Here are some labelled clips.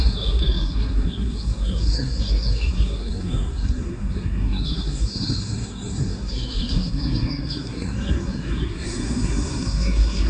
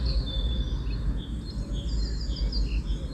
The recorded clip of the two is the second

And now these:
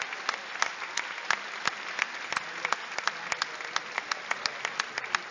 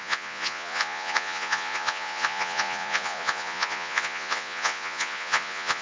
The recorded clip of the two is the first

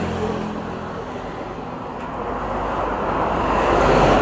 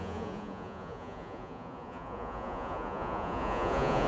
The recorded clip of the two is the first